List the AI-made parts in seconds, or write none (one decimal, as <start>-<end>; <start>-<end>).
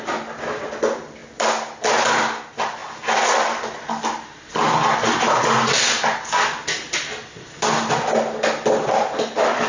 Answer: none